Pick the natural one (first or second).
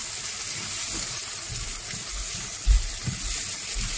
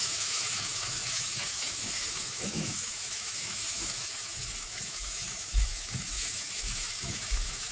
first